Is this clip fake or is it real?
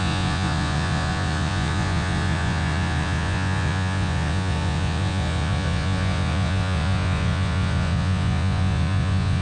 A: fake